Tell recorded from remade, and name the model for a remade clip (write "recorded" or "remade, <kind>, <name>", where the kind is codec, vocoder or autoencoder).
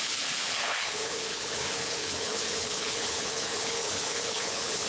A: remade, codec, HILCodec